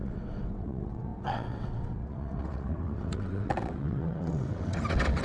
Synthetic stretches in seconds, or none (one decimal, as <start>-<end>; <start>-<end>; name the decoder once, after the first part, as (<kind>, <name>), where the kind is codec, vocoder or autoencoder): 0.0-5.2 (vocoder, WaveNeXt)